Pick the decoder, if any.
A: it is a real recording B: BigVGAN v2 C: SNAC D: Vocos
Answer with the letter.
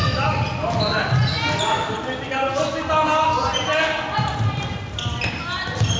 A